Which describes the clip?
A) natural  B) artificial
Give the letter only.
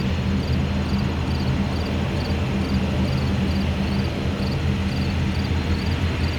A